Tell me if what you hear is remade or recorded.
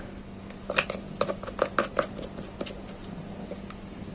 recorded